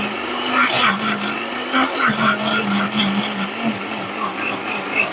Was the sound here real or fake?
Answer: real